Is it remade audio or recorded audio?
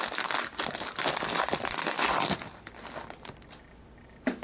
recorded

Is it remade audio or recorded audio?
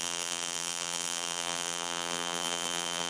remade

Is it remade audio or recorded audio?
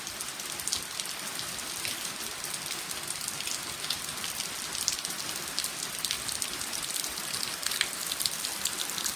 recorded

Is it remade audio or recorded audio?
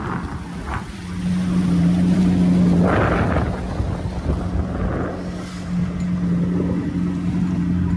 recorded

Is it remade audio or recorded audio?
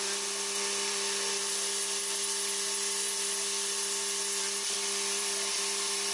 recorded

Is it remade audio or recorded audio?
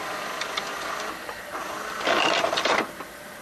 remade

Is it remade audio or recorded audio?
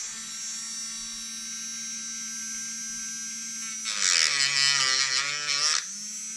recorded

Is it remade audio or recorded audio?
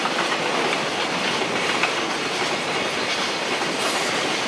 recorded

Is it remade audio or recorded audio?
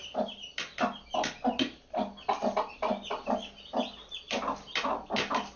recorded